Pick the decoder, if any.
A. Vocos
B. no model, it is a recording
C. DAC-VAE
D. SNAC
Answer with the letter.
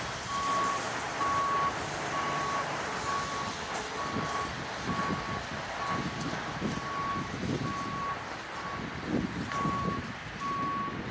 B